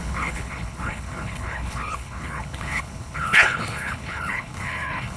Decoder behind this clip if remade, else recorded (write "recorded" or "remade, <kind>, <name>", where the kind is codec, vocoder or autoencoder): remade, codec, HILCodec